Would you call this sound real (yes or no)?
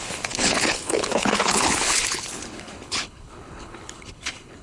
no